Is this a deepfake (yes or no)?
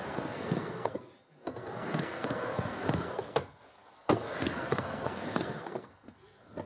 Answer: yes